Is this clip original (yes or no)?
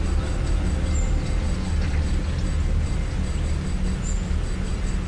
yes